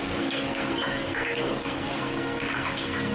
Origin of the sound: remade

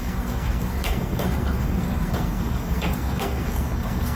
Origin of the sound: remade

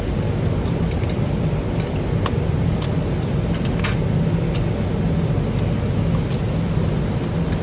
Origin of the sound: recorded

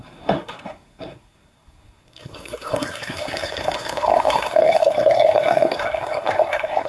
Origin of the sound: remade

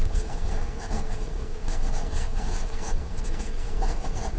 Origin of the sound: remade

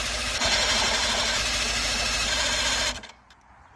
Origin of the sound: recorded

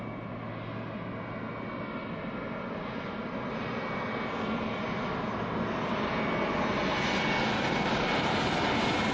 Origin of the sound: recorded